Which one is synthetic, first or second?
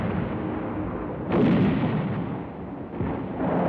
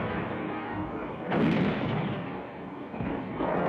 second